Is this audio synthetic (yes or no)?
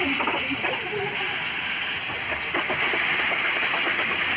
no